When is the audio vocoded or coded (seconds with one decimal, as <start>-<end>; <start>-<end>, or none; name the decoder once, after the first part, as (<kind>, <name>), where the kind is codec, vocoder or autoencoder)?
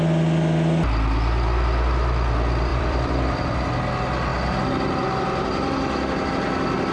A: 2.7-3.4 (vocoder, BigVGAN v2)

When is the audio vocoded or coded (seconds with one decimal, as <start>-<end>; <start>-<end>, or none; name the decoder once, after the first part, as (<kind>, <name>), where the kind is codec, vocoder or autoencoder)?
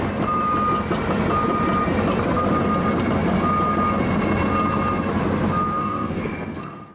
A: 5.8-6.9 (codec, SNAC)